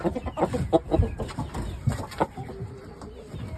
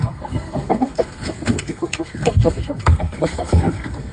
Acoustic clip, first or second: first